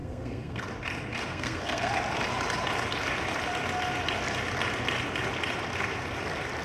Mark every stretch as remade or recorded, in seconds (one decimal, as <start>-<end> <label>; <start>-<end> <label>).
0.0-0.6 remade; 0.6-1.3 recorded; 1.3-1.9 remade; 1.9-6.6 recorded